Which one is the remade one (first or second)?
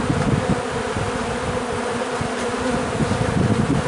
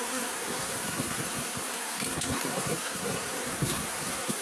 second